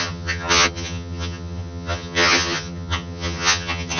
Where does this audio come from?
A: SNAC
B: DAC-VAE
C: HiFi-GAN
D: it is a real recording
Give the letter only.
C